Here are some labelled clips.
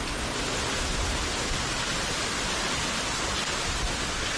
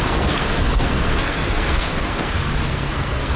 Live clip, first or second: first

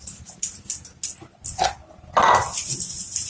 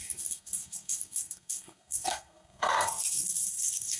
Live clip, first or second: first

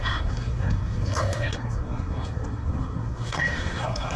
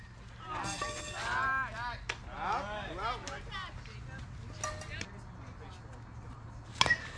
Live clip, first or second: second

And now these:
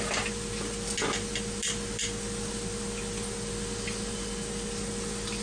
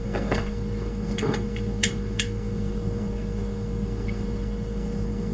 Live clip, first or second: first